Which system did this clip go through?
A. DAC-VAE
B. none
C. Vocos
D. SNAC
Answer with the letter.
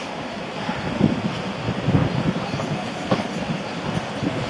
B